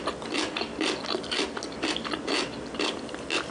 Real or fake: real